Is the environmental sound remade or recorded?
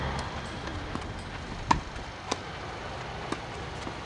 recorded